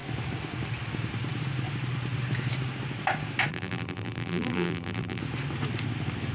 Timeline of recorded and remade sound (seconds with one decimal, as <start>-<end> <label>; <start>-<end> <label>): 0.0-3.5 recorded; 3.5-5.2 remade; 5.2-6.3 recorded

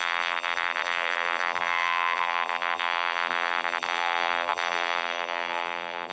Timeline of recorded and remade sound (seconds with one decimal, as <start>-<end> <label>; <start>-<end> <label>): 0.0-6.1 remade